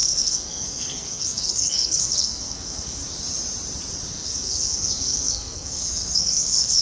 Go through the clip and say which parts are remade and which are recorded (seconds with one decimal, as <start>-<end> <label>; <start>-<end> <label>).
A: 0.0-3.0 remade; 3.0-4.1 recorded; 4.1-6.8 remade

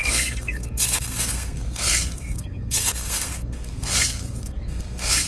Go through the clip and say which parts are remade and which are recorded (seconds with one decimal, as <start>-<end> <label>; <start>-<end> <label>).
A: 0.0-5.3 remade

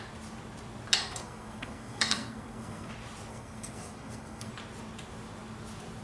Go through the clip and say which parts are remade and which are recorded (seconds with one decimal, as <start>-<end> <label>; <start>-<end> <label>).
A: 0.0-1.0 recorded; 1.0-2.9 remade; 2.9-3.3 recorded; 3.3-4.5 remade; 4.5-6.0 recorded